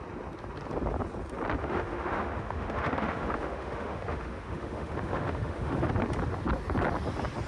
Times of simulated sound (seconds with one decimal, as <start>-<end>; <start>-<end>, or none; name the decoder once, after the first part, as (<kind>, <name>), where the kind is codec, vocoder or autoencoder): 1.6-5.9 (autoencoder, DAC-VAE)